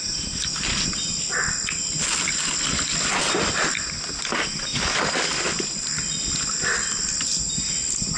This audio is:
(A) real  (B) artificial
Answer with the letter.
A